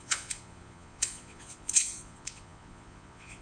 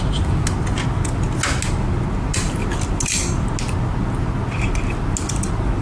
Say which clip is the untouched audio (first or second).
second